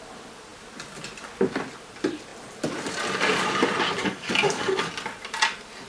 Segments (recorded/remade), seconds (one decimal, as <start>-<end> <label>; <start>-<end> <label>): 0.0-4.0 recorded; 4.0-4.9 remade; 4.9-5.9 recorded